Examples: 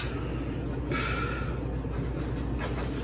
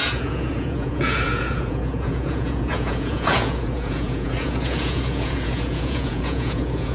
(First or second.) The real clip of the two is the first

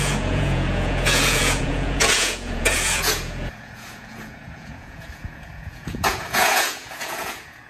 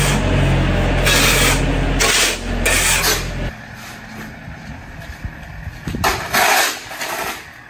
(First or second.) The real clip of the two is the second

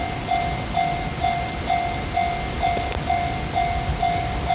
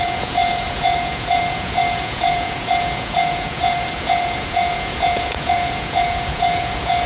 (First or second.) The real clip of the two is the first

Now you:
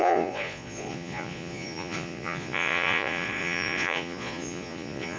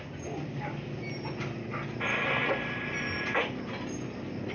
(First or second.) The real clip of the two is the second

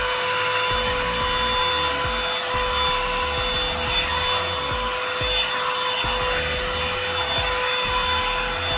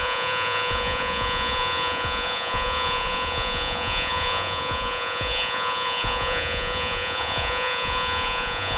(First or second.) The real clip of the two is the first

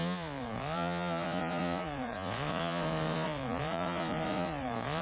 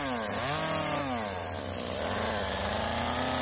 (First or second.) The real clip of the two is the second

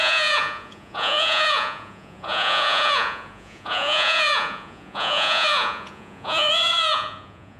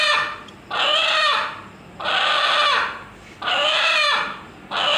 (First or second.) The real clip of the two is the second